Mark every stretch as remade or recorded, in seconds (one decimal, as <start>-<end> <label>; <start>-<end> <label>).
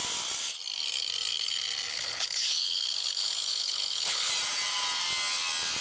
0.0-1.9 recorded; 1.9-4.3 remade; 4.3-5.8 recorded